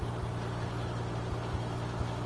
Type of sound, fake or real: real